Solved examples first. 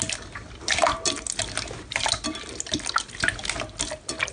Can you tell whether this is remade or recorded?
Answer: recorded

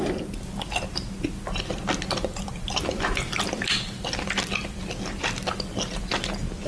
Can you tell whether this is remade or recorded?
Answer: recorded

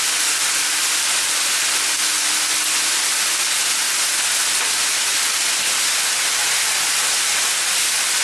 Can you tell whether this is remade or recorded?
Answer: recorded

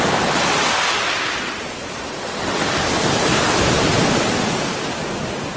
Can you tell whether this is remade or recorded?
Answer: recorded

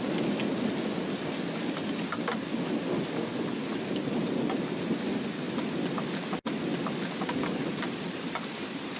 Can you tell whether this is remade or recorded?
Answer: recorded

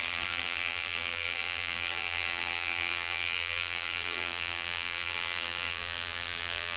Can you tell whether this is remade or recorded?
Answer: remade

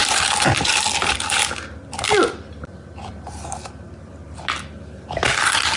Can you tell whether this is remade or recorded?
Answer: recorded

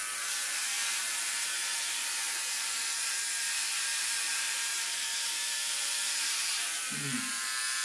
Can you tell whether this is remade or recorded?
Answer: remade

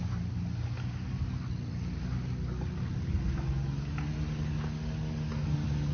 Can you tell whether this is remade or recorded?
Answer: recorded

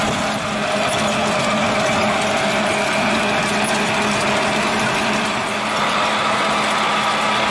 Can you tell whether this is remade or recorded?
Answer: recorded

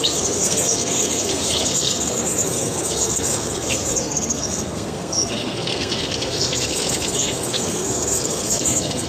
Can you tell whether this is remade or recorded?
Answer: remade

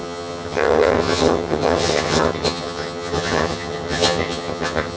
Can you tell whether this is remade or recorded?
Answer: remade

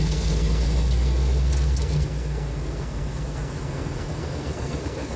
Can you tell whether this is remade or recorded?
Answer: remade